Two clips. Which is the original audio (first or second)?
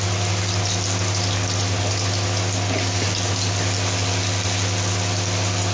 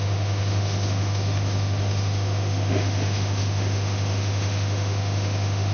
first